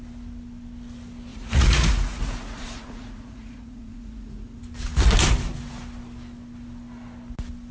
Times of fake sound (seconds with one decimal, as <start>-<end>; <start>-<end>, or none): 1.3-4.6